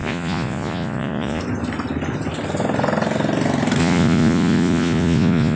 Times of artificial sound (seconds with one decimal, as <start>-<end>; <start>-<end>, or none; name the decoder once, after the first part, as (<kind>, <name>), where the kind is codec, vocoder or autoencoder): 0.0-1.4 (vocoder, Vocos); 3.8-5.6